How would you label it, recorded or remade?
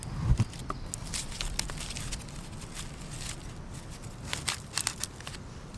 recorded